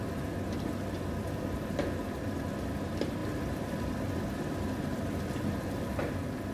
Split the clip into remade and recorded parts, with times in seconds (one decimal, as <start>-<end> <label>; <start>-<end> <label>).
0.0-6.5 recorded